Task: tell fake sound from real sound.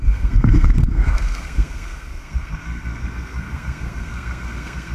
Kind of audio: fake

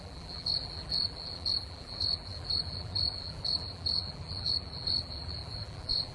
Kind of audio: fake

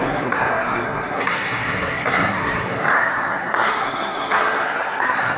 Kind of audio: fake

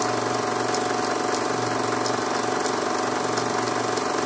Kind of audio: real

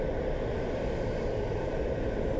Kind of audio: real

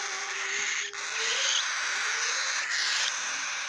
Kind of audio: real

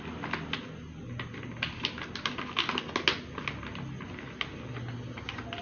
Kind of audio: real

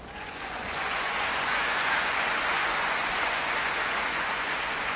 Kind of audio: fake